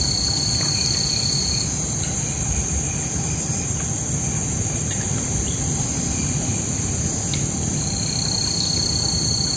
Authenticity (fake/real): real